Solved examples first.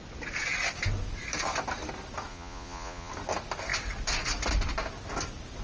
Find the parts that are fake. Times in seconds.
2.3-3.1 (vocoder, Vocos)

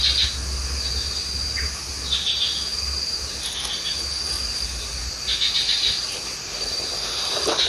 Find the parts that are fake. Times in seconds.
none

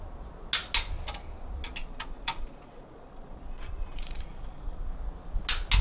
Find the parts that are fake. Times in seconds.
1.8-4.9 (vocoder, Vocos)

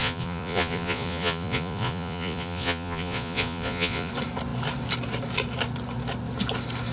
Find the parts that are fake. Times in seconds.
0.0-4.1 (vocoder, Vocos)

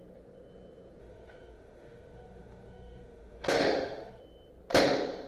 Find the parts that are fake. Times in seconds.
1.0-4.2 (autoencoder, DAC-VAE)

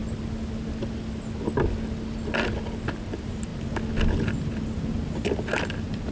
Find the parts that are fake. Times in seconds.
none

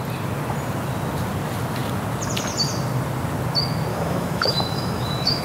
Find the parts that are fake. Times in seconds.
3.9-5.4 (autoencoder, DAC-VAE)

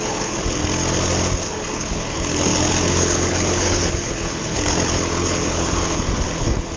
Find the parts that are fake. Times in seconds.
0.0-0.6 (codec, HILCodec); 1.5-6.8